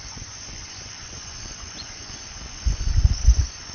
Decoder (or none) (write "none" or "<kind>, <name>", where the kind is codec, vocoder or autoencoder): vocoder, Vocos